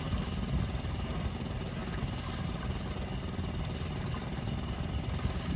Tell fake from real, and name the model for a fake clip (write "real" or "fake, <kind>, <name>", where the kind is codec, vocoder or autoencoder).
real